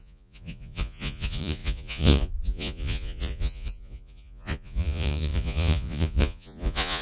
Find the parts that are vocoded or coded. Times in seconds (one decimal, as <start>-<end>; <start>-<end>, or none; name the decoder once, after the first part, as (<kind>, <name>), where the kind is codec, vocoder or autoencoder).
0.0-7.0 (vocoder, Vocos)